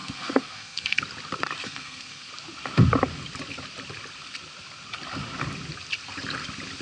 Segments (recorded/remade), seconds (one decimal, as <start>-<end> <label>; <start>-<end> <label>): 0.0-1.0 remade; 1.0-1.6 recorded; 1.6-2.3 remade; 2.3-6.8 recorded